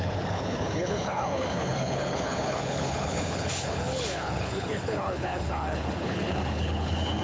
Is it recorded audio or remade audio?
remade